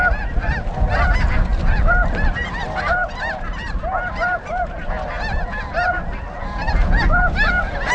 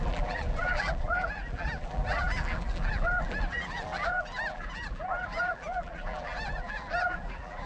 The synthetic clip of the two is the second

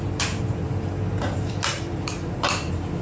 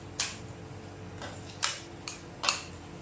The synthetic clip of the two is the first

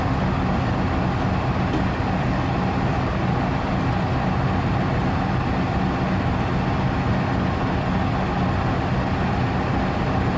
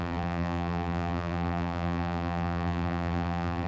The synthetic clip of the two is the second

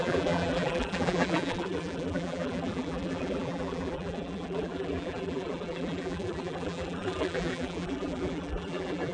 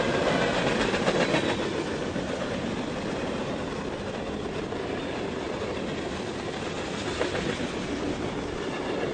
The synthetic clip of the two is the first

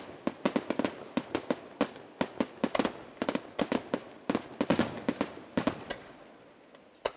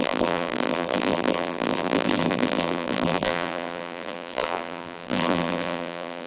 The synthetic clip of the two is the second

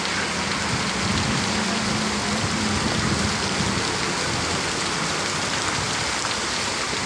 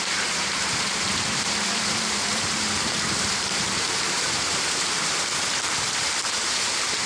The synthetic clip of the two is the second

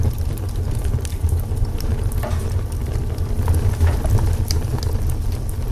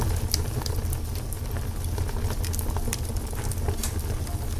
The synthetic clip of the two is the first